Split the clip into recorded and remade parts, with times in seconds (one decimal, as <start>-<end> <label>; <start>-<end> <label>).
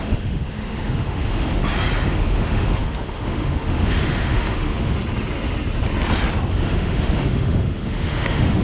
0.0-1.6 remade; 1.6-2.1 recorded; 2.1-5.0 remade; 5.0-6.5 recorded; 6.5-8.6 remade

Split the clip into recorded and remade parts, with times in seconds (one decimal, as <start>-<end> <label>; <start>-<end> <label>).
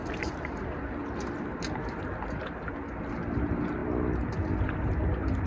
0.0-5.5 recorded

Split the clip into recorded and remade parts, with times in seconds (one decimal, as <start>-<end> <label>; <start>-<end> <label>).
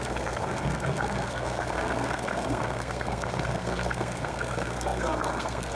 0.0-5.7 remade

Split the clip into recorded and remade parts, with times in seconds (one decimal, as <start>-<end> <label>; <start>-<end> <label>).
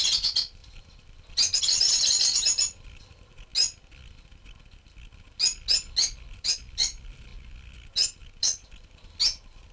0.0-3.5 remade; 3.5-6.3 recorded; 6.3-7.3 remade; 7.3-8.4 recorded; 8.4-9.7 remade